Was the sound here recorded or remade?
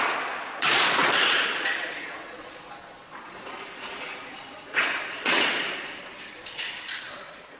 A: remade